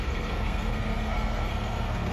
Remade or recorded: remade